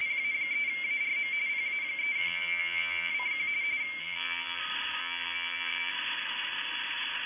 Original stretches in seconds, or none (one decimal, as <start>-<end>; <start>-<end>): 0.0-2.2; 3.1-4.0; 4.6-5.0; 5.9-7.3